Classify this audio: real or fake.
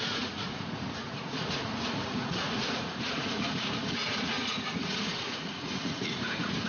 fake